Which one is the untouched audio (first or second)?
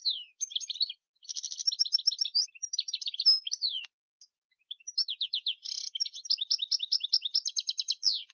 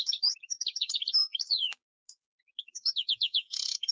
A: first